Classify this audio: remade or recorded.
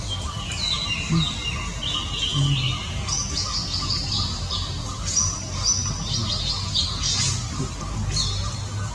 recorded